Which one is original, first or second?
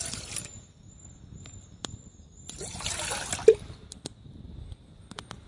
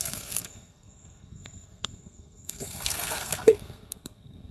first